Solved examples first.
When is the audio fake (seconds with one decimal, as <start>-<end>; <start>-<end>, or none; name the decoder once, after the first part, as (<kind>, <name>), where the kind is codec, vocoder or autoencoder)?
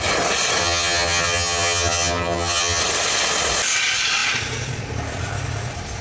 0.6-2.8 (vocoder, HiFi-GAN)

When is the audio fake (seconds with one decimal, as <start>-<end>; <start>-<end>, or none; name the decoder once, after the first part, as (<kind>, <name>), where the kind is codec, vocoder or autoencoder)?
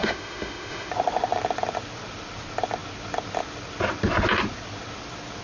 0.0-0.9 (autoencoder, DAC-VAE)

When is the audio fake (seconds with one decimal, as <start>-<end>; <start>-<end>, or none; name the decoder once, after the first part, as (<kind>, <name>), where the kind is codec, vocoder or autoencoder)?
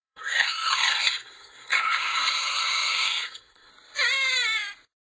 0.0-3.7 (codec, SNAC)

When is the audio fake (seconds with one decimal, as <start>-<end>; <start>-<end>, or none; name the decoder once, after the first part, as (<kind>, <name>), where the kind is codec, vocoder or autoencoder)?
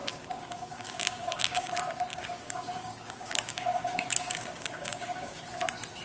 0.0-1.7 (codec, DAC); 2.1-5.4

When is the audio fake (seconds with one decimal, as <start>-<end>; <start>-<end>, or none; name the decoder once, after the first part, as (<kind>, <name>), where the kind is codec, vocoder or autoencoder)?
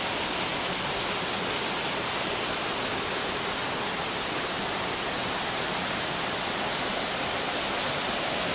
none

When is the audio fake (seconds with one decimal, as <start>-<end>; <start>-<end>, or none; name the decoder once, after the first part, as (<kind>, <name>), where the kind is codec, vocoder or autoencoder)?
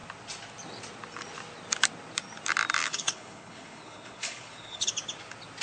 2.8-4.9 (codec, HILCodec)